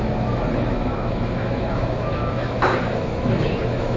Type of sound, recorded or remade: remade